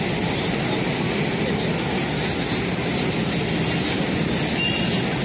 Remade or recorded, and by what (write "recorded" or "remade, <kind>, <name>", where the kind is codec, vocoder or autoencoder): recorded